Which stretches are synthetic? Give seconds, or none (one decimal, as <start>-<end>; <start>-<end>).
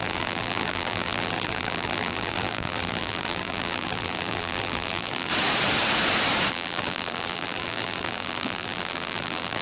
0.0-5.3; 6.5-9.6